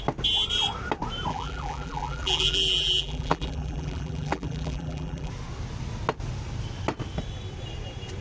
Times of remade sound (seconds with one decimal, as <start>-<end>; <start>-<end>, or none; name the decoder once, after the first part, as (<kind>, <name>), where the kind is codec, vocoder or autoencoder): 1.3-5.3 (vocoder, BigVGAN v2)